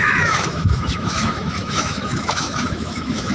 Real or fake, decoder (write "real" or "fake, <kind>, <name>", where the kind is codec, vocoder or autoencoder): fake, autoencoder, DAC-VAE